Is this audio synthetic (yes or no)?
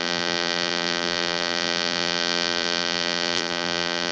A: yes